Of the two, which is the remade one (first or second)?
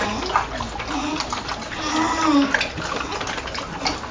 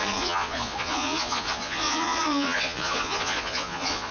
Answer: second